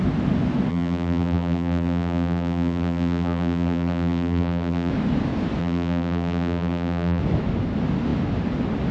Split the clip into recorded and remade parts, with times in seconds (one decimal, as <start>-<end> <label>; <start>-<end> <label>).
0.0-0.7 recorded; 0.7-4.9 remade; 4.9-5.6 recorded; 5.6-7.2 remade; 7.2-8.9 recorded